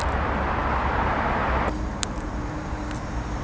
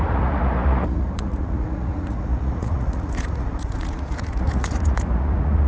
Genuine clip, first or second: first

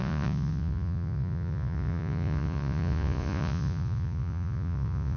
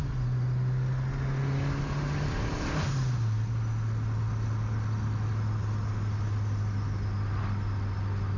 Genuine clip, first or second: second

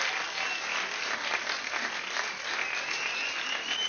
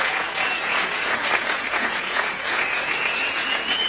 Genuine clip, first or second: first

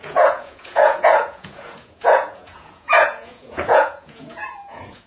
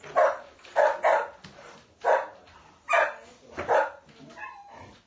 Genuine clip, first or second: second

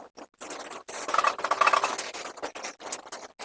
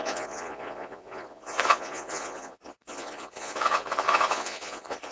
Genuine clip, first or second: first